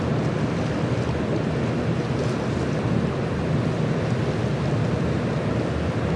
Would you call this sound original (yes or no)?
yes